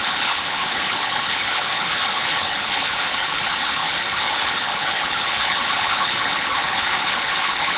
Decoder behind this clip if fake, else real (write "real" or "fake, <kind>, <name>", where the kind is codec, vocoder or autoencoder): fake, codec, HILCodec